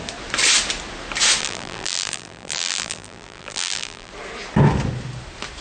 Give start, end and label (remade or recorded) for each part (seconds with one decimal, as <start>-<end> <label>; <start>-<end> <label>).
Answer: 0.0-1.4 recorded; 1.4-4.1 remade; 4.1-5.6 recorded

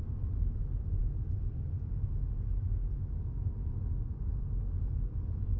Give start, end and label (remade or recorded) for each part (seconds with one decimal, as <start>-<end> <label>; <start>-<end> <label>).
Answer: 0.0-5.6 recorded

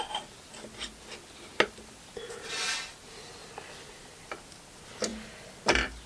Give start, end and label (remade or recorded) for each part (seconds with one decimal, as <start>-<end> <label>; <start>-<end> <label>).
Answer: 0.0-6.1 recorded

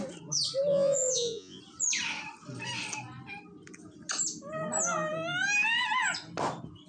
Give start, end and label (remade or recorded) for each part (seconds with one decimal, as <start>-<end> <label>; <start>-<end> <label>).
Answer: 0.0-0.7 recorded; 0.7-1.6 remade; 1.6-6.9 recorded